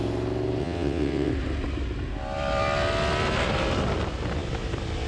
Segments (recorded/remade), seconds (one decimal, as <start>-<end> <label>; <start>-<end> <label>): 0.0-0.6 recorded; 0.6-1.3 remade; 1.3-5.1 recorded